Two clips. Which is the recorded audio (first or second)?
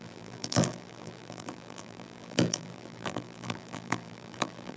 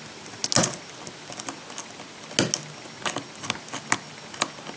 second